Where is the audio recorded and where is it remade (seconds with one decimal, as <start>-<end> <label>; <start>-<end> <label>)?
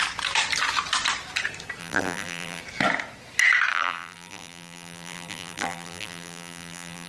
0.0-1.8 recorded; 1.8-2.6 remade; 2.6-3.7 recorded; 3.7-7.1 remade